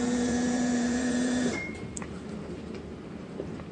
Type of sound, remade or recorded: remade